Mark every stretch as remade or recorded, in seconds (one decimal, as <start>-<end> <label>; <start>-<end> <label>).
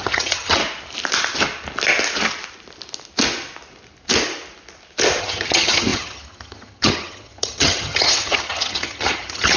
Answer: 0.0-0.6 remade; 0.6-5.2 recorded; 5.2-9.6 remade